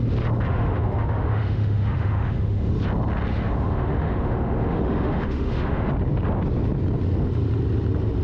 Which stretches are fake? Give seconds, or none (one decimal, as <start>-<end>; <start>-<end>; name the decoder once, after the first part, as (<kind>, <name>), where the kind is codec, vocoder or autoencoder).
0.5-2.7 (autoencoder, DAC-VAE); 3.3-5.9

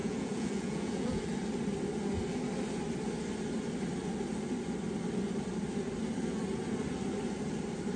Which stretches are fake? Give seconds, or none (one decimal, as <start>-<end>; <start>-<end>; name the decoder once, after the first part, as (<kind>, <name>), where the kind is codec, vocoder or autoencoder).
0.0-1.2 (vocoder, Vocos)

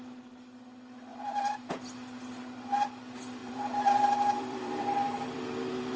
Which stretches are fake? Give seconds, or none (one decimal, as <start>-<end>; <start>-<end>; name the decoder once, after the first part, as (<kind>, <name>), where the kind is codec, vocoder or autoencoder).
1.1-1.7 (vocoder, BigVGAN v2); 3.4-6.0

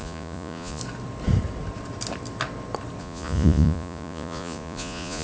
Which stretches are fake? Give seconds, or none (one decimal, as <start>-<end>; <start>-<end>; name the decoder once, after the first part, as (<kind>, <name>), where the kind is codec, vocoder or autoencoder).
0.0-0.8 (vocoder, Vocos); 3.0-5.2